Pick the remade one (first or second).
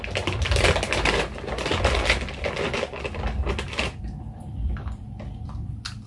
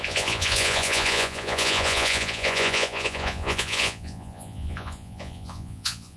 second